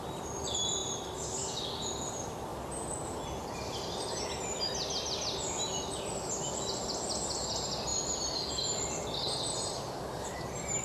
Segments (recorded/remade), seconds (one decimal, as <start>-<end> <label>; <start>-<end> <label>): 0.0-10.8 recorded